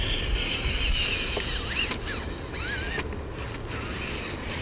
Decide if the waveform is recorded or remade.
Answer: recorded